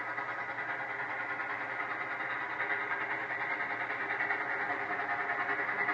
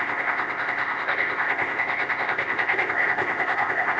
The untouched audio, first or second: first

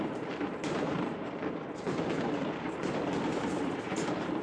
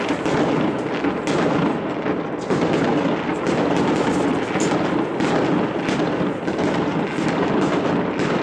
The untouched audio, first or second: second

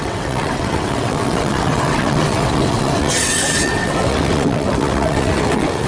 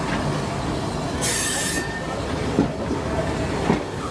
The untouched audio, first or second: second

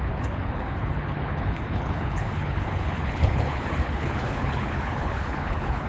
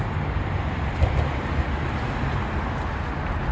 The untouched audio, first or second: second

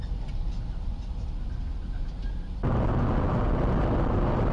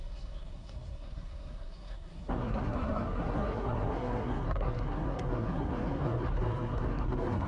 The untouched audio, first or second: first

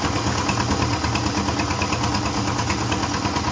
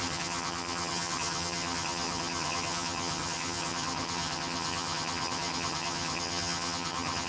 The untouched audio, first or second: first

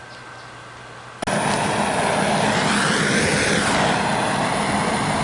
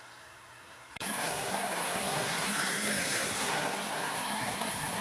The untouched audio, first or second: first